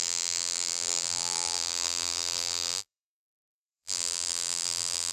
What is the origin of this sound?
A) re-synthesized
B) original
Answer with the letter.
A